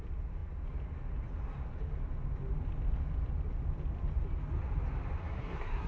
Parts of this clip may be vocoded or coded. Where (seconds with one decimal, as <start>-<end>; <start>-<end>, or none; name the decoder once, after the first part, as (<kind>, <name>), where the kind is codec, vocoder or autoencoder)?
5.2-5.9 (codec, SNAC)